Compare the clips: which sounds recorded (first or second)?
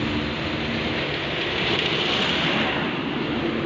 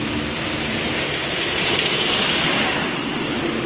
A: first